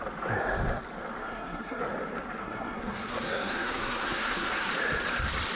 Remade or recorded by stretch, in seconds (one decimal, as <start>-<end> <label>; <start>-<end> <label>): 0.0-1.2 recorded; 1.2-1.8 remade; 1.8-2.4 recorded; 2.4-4.7 remade; 4.7-5.6 recorded